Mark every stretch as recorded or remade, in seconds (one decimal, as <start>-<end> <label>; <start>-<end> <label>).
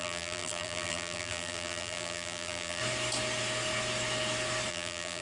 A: 0.0-2.8 remade; 2.8-4.7 recorded; 4.7-5.2 remade